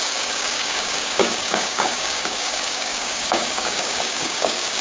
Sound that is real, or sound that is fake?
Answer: fake